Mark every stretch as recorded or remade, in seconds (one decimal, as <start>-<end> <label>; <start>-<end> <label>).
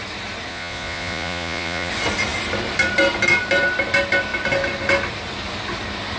0.0-0.5 recorded; 0.5-1.9 remade; 1.9-6.2 recorded